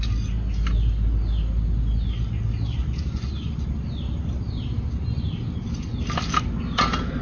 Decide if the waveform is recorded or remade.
recorded